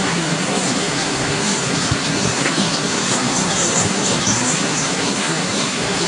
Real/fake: fake